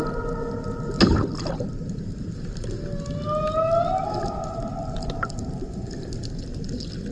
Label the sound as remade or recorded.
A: recorded